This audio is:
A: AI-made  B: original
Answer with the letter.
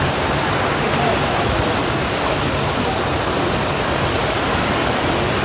B